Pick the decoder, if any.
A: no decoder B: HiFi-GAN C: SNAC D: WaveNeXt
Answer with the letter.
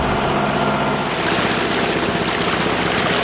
A